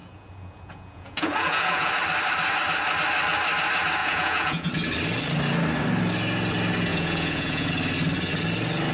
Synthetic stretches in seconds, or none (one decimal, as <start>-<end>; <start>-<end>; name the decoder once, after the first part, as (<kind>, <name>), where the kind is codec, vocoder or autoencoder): 0.0-1.9 (vocoder, Vocos); 4.0-4.7; 6.9-7.7